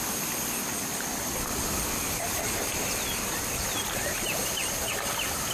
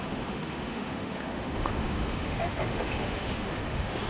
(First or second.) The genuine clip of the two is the first